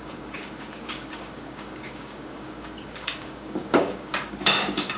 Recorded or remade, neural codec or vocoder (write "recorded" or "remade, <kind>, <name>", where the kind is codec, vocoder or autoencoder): remade, codec, DAC